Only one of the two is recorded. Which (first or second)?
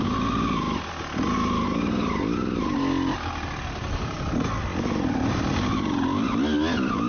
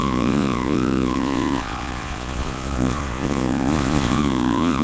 first